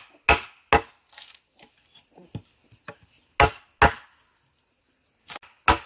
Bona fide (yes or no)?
yes